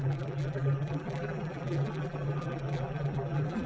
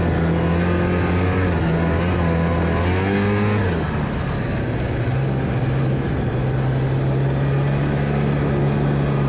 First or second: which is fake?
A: first